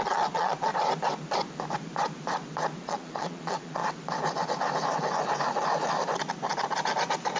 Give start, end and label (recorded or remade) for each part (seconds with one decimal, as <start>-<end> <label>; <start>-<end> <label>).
0.0-0.7 remade; 0.7-2.8 recorded; 2.8-3.8 remade; 3.8-7.4 recorded